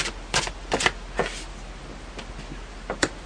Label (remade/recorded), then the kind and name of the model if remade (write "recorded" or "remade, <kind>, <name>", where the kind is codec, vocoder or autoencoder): remade, vocoder, BigVGAN v2